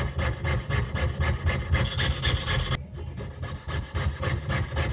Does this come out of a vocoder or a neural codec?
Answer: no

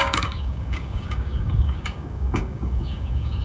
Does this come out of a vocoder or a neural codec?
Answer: yes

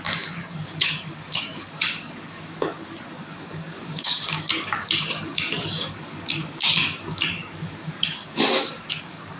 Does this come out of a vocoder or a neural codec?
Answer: yes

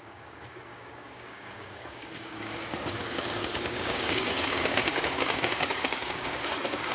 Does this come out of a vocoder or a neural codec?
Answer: yes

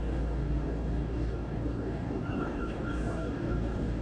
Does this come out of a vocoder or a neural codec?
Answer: yes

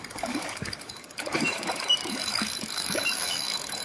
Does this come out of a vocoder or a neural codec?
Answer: yes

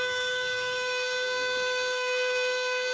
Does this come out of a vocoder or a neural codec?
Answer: yes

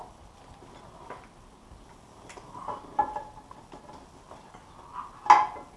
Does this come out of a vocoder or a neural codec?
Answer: no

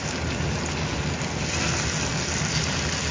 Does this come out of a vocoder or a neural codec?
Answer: no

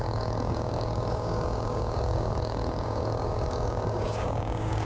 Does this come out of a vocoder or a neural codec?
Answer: yes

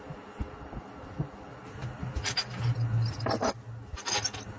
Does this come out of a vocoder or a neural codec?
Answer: no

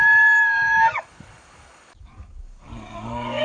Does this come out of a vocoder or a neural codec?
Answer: yes